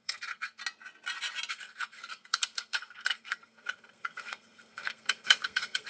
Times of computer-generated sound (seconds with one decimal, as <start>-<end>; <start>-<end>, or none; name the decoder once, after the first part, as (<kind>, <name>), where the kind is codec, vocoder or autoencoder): 0.0-0.6 (codec, SNAC); 1.5-5.9